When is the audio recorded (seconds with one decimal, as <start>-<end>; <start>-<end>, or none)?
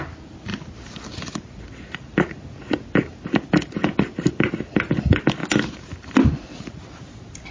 0.0-7.5